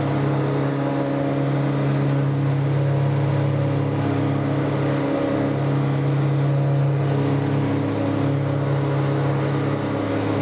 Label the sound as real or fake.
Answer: real